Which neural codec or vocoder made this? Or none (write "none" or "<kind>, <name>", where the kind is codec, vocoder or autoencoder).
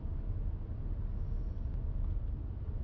none